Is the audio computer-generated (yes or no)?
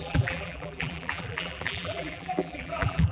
yes